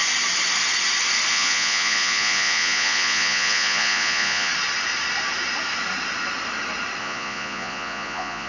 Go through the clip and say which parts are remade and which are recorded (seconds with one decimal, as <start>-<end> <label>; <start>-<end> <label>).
0.0-1.3 recorded; 1.3-4.5 remade; 4.5-7.0 recorded; 7.0-8.5 remade